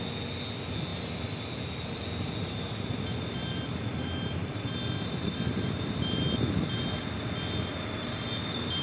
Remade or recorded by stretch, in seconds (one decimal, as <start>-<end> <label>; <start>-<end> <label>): 0.0-8.8 recorded